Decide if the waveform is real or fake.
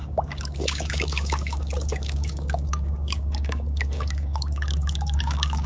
fake